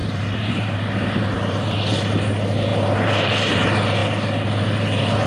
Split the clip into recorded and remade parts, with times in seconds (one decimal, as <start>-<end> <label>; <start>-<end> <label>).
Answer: 0.0-1.8 remade; 1.8-2.7 recorded; 2.7-3.5 remade; 3.5-5.3 recorded